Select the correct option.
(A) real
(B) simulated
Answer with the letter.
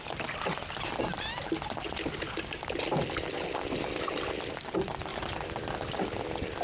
A